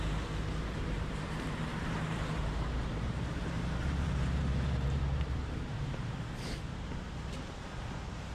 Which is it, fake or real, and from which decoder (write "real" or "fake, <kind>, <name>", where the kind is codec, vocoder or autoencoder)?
fake, vocoder, BigVGAN v2